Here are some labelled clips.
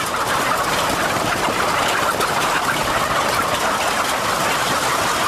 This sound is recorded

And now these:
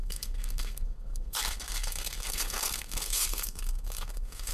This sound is remade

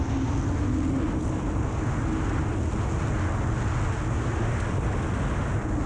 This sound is recorded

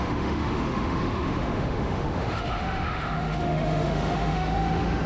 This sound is remade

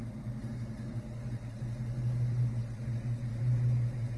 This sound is recorded